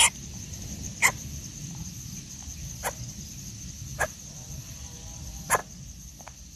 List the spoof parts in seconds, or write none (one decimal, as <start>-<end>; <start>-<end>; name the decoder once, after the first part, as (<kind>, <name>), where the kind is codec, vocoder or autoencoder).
none